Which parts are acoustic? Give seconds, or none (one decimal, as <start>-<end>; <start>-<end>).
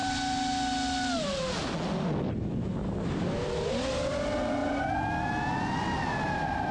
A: 0.0-6.7